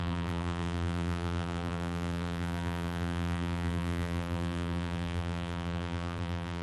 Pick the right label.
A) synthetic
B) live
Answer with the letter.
A